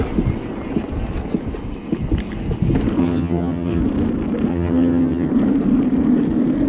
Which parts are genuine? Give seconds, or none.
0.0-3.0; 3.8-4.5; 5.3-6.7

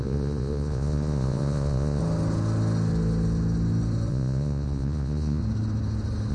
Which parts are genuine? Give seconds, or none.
2.0-4.1; 5.4-6.3

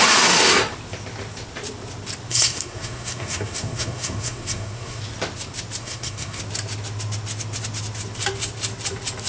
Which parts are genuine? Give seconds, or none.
0.0-2.3; 5.0-5.8; 6.4-9.3

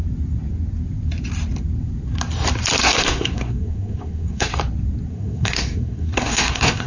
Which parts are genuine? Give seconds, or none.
0.0-2.8; 4.5-5.1

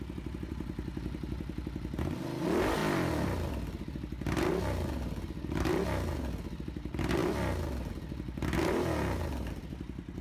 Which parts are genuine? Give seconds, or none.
0.0-10.2

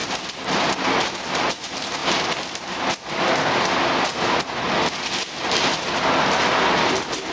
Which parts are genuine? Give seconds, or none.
0.0-7.3